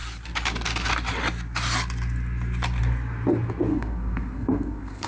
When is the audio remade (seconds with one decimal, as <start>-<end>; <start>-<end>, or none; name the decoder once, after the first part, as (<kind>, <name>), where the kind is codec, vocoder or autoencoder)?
3.7-5.1 (codec, SNAC)

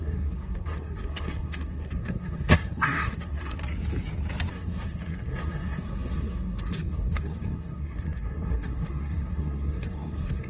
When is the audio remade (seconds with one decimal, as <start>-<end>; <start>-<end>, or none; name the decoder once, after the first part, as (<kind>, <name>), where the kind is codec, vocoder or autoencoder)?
0.0-3.6 (codec, SNAC); 4.5-10.5